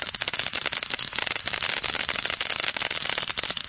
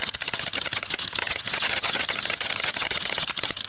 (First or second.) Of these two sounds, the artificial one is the second